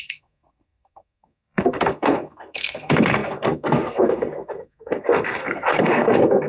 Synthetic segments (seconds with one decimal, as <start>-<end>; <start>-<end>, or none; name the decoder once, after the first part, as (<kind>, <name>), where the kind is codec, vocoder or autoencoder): 0.0-6.5 (codec, SNAC)